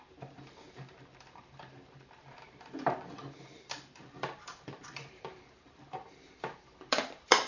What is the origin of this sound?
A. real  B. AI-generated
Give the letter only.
B